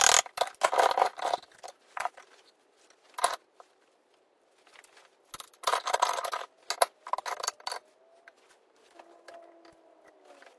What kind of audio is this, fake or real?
real